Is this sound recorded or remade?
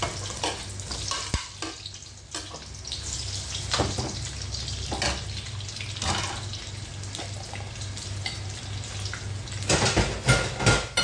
recorded